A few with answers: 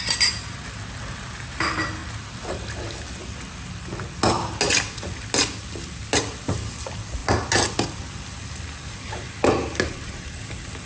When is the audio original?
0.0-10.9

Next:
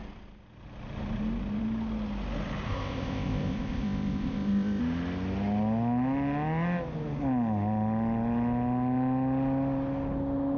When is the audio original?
0.0-2.7; 4.8-10.6

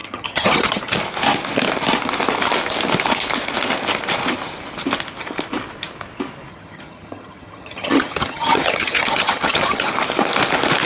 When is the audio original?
0.8-6.5; 9.9-10.9

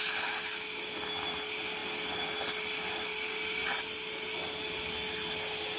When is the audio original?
0.0-5.8

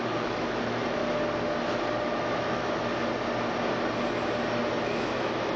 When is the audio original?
1.0-2.0; 3.0-4.8

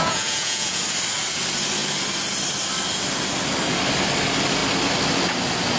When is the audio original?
0.8-5.8

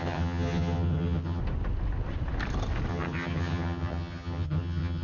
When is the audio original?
1.4-2.9

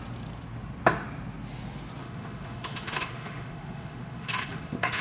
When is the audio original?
0.0-2.0